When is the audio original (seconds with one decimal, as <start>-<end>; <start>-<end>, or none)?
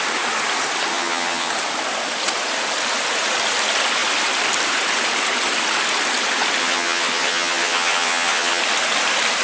0.0-0.9; 1.5-6.6; 8.6-9.4